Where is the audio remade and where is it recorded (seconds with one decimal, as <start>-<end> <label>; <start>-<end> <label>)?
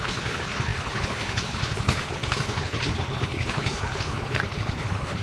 0.0-5.2 remade